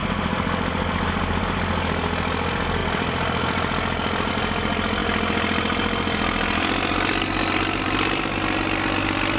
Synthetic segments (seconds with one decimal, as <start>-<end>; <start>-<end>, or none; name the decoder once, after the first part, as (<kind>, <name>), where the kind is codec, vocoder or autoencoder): 2.8-4.3 (vocoder, BigVGAN v2)